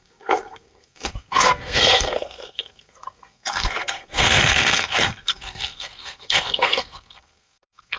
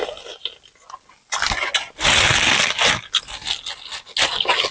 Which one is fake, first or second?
first